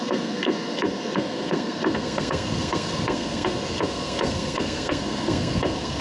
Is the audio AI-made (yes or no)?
yes